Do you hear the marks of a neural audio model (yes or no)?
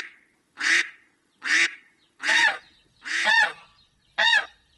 yes